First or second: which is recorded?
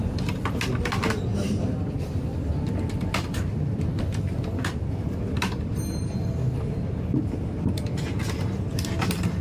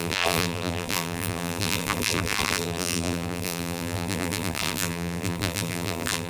first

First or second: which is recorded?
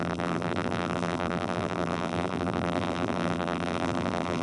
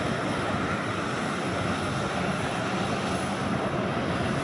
second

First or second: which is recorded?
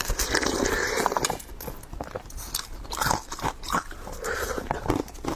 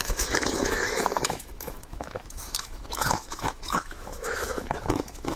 first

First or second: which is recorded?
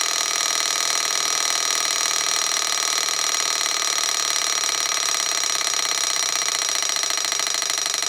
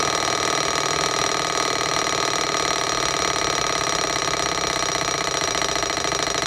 first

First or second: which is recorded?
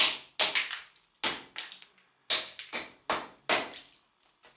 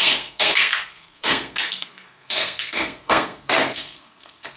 first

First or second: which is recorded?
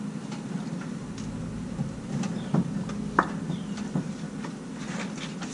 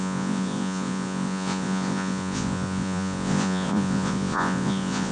first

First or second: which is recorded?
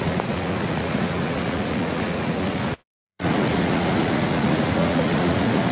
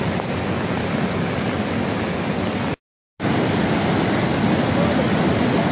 second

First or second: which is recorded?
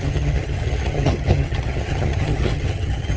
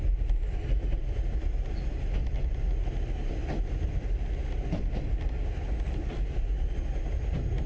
second